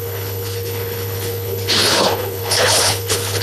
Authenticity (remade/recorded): remade